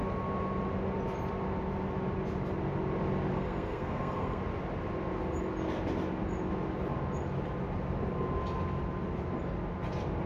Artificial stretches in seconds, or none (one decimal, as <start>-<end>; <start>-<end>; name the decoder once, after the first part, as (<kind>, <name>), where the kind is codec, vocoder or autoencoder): 3.3-4.4 (codec, SNAC)